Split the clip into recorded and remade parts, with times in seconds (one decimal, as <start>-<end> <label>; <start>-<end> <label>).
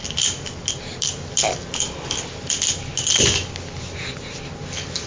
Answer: 0.0-5.1 recorded